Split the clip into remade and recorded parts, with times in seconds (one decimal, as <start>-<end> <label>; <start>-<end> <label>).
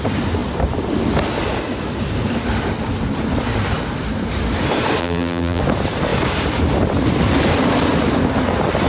0.0-5.0 recorded; 5.0-5.6 remade; 5.6-8.9 recorded